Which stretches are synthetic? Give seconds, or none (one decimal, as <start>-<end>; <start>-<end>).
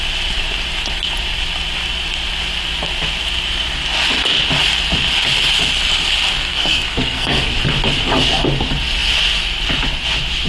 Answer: 6.5-7.5